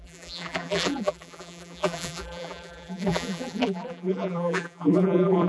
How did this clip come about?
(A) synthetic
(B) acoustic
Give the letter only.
A